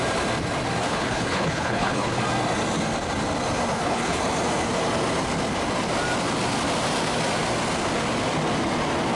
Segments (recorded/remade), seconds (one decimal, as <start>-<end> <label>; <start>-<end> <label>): 0.0-0.8 recorded; 0.8-2.2 remade; 2.2-3.7 recorded; 3.7-4.2 remade; 4.2-9.2 recorded